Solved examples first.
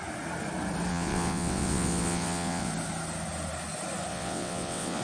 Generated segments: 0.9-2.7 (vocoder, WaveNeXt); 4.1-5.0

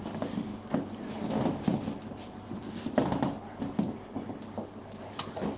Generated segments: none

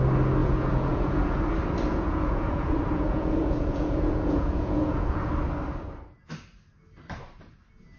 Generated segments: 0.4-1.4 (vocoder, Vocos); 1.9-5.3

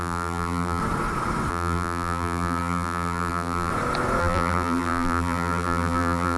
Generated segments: 0.0-0.8 (vocoder, BigVGAN v2); 1.5-3.7; 4.2-6.4

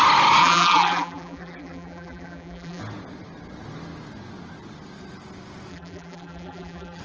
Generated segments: 0.4-2.8 (vocoder, BigVGAN v2); 5.7-7.0

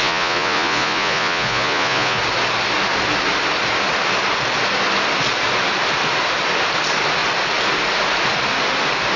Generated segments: 0.0-2.2 (vocoder, Vocos)

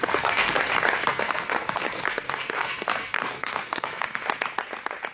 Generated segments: 0.0-0.6 (codec, SNAC); 1.1-4.2